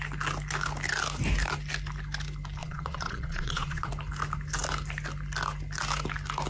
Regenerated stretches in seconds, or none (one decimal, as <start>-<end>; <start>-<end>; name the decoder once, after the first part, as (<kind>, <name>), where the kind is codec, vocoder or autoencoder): 2.6-3.9 (vocoder, Vocos)